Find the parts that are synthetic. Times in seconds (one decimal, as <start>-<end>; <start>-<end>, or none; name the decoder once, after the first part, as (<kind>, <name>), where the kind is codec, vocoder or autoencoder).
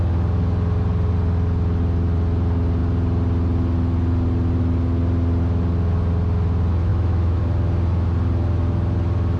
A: 6.9-7.4 (autoencoder, DAC-VAE)